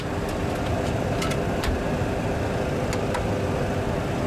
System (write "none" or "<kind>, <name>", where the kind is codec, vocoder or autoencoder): none